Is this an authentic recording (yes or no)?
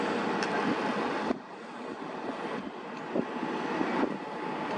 yes